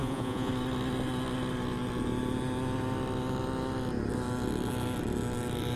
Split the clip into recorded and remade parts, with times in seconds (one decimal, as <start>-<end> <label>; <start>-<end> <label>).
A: 0.0-0.5 remade; 0.5-5.8 recorded